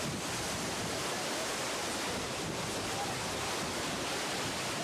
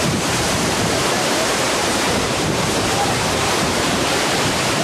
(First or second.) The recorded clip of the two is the first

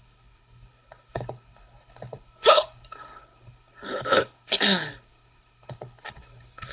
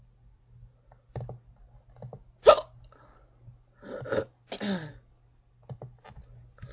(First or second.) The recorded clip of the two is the second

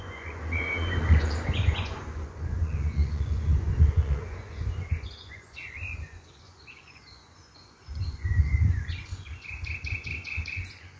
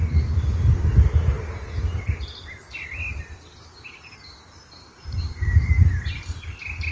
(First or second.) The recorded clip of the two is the second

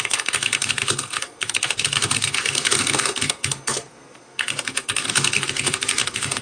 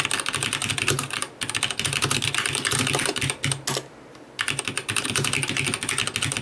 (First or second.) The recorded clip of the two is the second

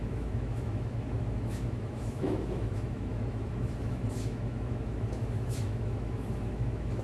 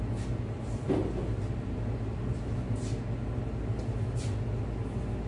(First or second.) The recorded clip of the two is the second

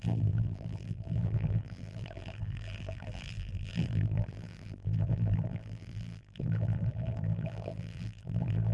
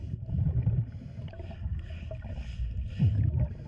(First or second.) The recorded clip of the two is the second